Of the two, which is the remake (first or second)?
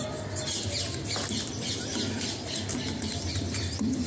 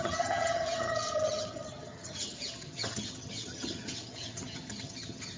second